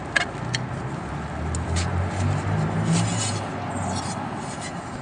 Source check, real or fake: real